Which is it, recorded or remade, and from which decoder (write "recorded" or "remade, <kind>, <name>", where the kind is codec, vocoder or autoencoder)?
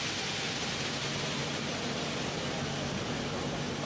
recorded